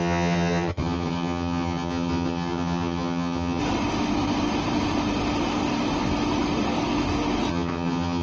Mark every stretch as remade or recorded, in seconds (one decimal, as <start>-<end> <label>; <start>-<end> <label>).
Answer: 0.0-3.6 remade; 3.6-7.5 recorded; 7.5-8.2 remade